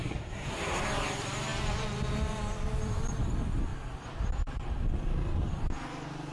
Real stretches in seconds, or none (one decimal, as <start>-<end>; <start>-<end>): 0.8-6.3